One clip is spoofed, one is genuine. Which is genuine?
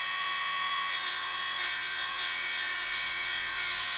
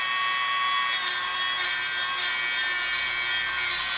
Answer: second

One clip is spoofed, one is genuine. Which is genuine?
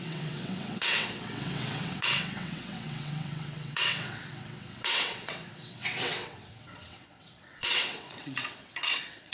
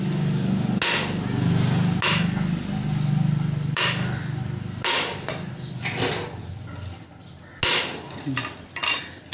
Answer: second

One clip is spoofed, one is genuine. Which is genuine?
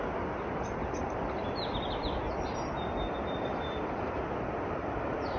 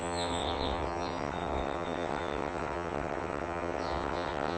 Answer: first